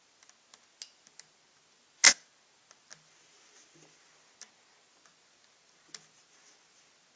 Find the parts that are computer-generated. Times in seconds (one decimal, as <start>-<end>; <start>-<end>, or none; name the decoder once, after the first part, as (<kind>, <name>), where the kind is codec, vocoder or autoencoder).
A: none